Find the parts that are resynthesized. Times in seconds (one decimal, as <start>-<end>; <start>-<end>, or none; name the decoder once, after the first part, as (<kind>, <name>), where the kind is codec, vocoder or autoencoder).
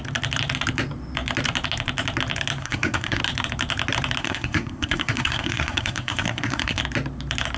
2.6-3.2 (codec, SNAC); 4.2-6.8